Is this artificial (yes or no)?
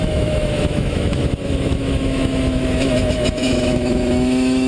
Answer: yes